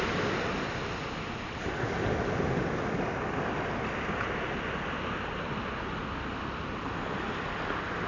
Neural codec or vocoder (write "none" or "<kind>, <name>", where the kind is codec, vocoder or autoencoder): none